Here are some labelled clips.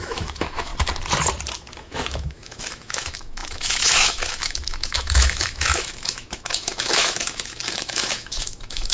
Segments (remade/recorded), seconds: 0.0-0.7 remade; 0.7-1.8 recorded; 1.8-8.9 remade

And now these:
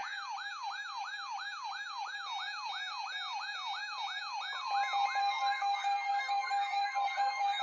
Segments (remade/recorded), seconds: 0.0-5.2 recorded; 5.2-7.6 remade

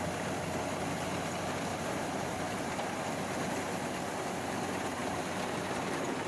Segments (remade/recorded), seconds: 0.0-1.7 recorded; 1.7-2.7 remade; 2.7-5.0 recorded; 5.0-6.3 remade

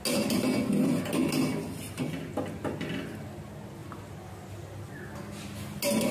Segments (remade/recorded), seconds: 0.0-6.1 recorded